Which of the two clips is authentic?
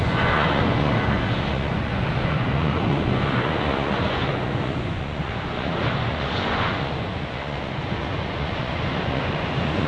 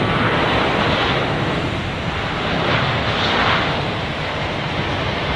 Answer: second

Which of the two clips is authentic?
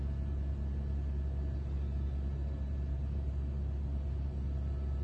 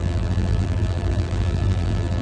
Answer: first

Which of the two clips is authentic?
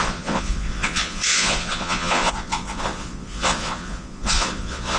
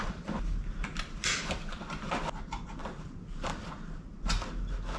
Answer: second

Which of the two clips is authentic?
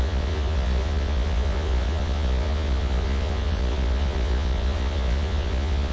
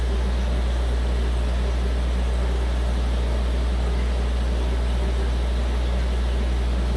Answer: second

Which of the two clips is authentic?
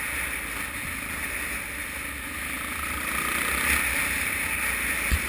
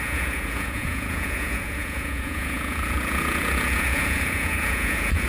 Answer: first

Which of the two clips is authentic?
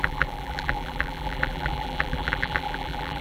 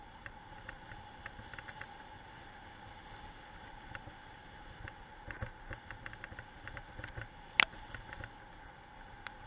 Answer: second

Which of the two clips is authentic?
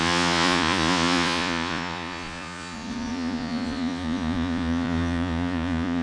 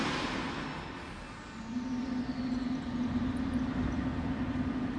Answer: second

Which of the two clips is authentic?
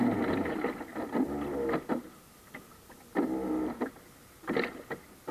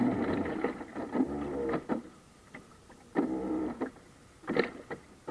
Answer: first